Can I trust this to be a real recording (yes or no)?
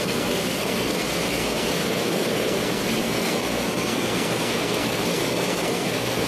no